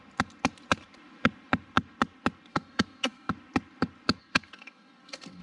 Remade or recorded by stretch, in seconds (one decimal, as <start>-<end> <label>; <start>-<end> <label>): 0.0-2.5 recorded; 2.5-3.3 remade; 3.3-4.2 recorded; 4.2-5.4 remade